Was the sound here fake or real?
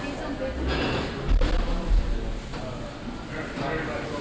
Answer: real